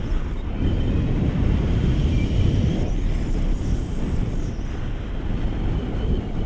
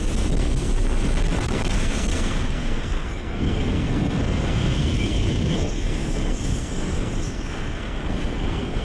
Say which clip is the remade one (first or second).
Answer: second